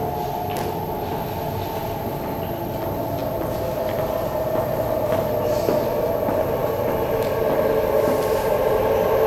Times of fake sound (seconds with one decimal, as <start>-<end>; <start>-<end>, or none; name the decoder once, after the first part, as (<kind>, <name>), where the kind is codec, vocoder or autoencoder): none